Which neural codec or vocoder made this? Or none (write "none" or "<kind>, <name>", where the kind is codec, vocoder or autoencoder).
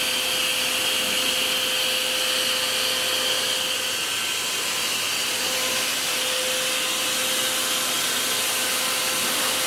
none